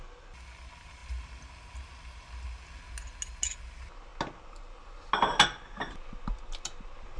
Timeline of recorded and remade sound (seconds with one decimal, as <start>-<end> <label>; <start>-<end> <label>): 0.0-7.2 recorded